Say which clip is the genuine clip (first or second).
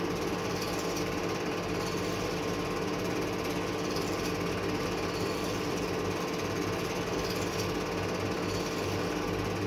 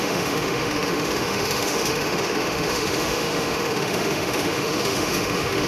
first